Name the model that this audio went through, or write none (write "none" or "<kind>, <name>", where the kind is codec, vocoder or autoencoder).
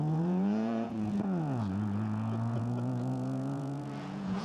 vocoder, Vocos